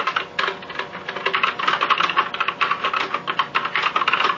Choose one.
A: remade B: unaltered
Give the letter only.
B